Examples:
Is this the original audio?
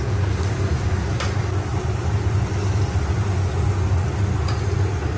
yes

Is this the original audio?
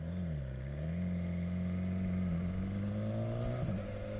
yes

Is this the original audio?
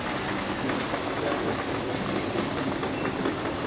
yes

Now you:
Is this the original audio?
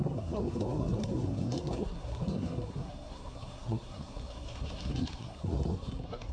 no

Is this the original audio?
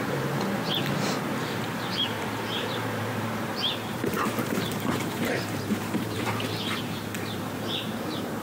no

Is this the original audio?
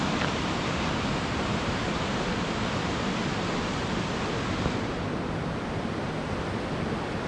yes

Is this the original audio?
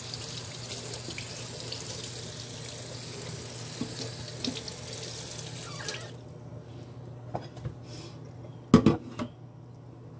yes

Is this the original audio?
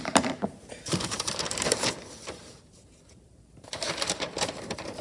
no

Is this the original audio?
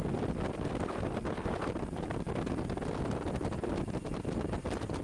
yes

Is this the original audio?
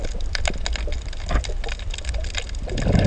yes